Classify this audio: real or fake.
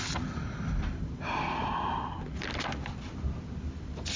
real